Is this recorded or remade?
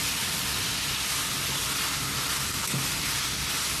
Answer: recorded